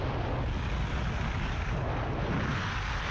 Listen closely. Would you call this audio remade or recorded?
recorded